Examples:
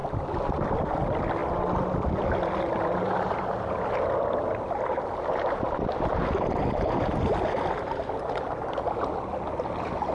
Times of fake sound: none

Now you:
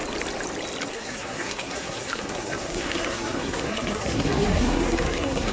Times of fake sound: 0.9-5.5 (codec, SNAC)

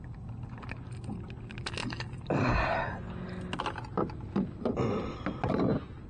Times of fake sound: none

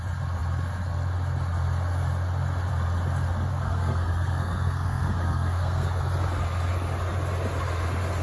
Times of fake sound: 3.5-6.0 (codec, SNAC)